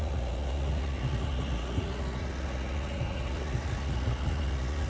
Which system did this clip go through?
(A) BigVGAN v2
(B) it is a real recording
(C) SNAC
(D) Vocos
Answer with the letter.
D